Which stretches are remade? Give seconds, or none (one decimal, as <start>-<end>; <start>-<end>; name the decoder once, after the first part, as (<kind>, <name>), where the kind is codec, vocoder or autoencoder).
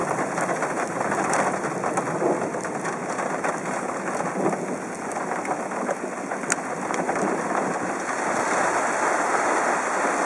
none